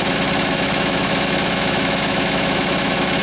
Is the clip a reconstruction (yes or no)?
yes